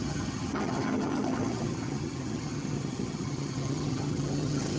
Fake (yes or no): yes